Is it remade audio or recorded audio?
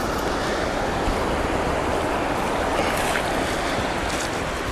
recorded